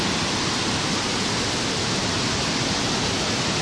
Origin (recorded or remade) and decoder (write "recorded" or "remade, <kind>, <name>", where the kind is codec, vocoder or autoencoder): recorded